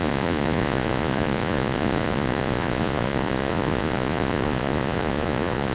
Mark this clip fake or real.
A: fake